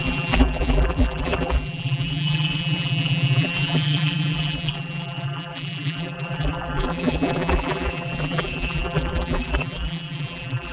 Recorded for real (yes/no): no